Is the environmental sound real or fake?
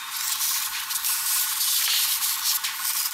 real